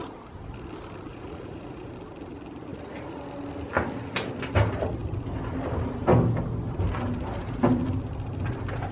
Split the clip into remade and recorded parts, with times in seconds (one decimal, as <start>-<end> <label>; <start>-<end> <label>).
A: 0.0-1.1 recorded; 1.1-1.9 remade; 1.9-2.7 recorded; 2.7-3.2 remade; 3.2-8.9 recorded